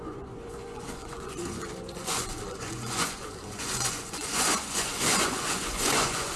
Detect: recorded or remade remade